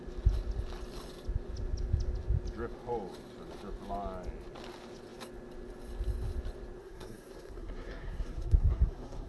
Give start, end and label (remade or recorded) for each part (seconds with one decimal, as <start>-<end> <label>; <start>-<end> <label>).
0.0-6.8 recorded; 6.8-9.3 remade